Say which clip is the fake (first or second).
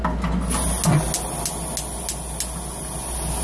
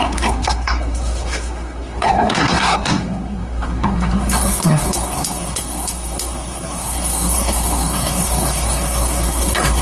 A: second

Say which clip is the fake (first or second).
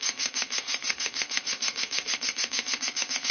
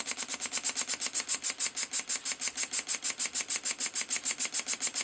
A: first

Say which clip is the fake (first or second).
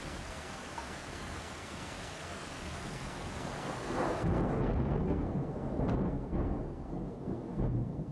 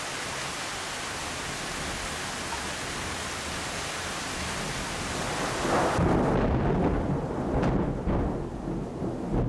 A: first